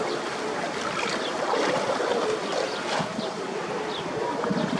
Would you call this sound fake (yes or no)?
no